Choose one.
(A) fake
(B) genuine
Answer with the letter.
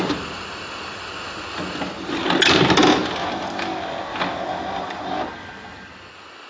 B